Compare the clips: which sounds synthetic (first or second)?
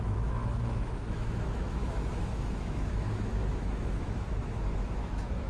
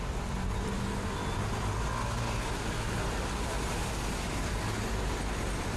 first